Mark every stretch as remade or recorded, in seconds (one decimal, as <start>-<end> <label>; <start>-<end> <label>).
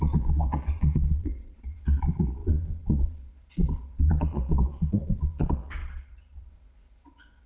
0.0-7.5 remade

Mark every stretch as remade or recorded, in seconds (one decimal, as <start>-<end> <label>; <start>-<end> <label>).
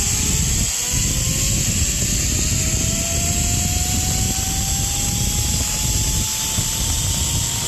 0.0-7.7 recorded